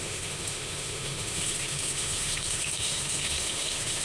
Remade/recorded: remade